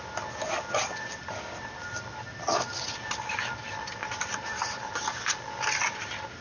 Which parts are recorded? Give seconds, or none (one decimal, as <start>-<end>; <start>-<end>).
0.0-6.4